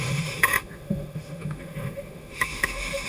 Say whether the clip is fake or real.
fake